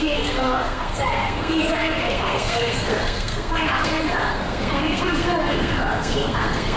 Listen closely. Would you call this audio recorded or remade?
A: remade